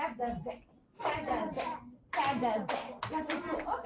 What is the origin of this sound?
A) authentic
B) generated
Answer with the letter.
A